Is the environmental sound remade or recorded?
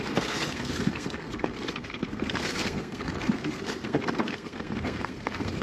remade